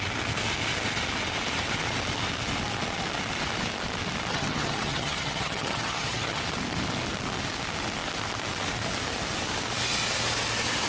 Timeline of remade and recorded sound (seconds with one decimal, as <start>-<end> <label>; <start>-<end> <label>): 0.0-4.3 recorded; 4.3-6.4 remade; 6.4-10.9 recorded